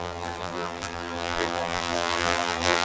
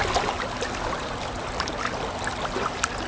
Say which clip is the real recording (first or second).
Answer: second